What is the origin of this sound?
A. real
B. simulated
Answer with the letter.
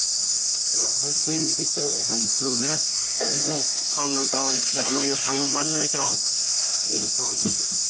B